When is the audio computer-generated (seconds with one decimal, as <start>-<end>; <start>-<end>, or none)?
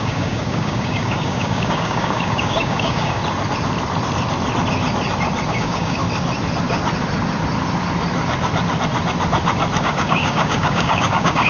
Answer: 0.0-3.2; 5.5-6.0; 9.8-11.5